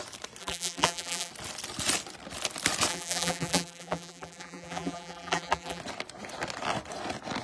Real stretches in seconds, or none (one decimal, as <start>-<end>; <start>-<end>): 0.0-0.4; 1.3-2.9; 5.8-7.4